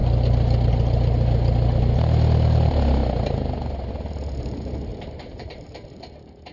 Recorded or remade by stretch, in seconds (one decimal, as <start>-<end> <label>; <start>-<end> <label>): 0.0-4.9 recorded; 4.9-5.9 remade; 5.9-6.5 recorded